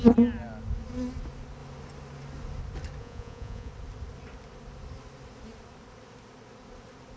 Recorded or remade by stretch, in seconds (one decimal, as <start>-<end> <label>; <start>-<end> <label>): 0.0-3.0 recorded; 3.0-3.7 remade; 3.7-7.2 recorded